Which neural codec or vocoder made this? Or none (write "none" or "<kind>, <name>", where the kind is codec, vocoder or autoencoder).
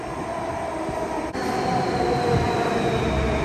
none